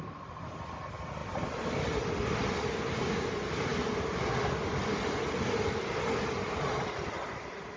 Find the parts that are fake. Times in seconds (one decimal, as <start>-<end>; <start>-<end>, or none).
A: none